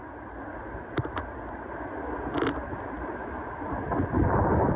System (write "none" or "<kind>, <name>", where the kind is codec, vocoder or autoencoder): none